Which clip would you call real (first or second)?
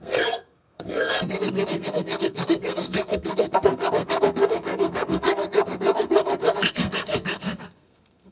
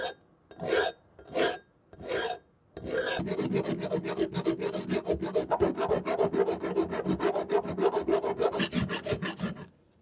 second